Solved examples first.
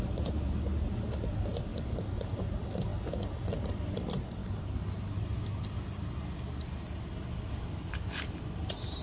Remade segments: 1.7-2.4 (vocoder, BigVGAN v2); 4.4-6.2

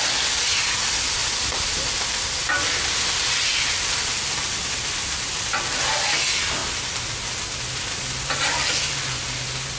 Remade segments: 3.5-5.9 (vocoder, BigVGAN v2)

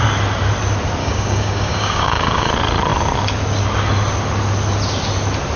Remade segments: 1.0-2.5 (codec, DAC)

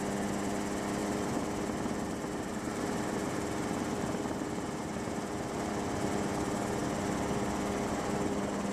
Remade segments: 1.0-5.7 (vocoder, BigVGAN v2)

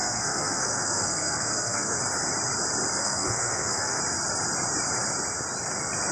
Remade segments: 0.0-2.0 (codec, SNAC); 3.0-4.0

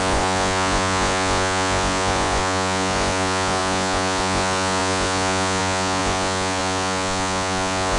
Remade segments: 0.0-8.0 (vocoder, Vocos)

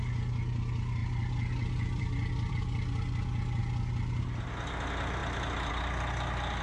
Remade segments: 1.0-2.5 (vocoder, BigVGAN v2)